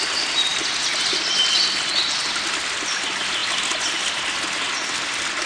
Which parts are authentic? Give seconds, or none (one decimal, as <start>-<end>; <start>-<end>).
0.0-5.5